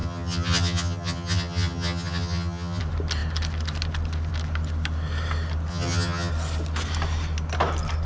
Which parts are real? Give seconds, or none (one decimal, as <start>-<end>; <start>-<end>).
2.8-5.7; 6.3-8.1